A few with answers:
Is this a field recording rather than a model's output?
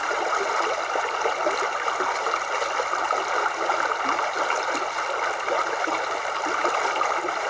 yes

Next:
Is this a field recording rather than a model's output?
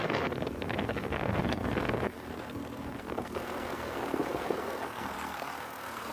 no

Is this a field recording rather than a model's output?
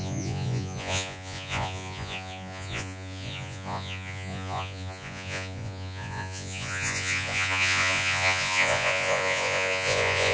no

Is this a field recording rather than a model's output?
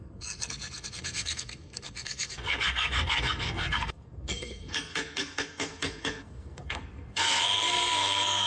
no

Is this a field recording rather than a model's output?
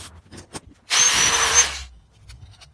yes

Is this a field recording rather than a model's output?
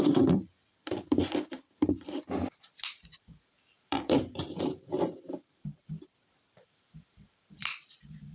no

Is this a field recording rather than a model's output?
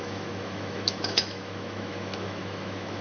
no